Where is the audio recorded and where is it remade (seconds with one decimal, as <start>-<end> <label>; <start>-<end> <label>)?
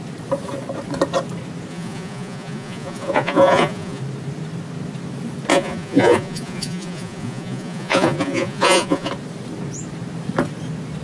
0.0-1.7 recorded; 1.7-4.0 remade; 4.0-5.5 recorded; 5.5-9.1 remade; 9.1-11.0 recorded